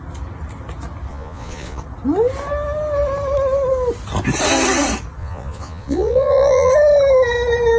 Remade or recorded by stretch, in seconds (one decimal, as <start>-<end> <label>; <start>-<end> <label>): 0.0-1.1 recorded; 1.1-1.8 remade; 1.8-5.2 recorded; 5.2-6.7 remade; 6.7-7.8 recorded